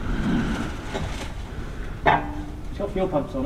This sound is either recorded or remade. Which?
recorded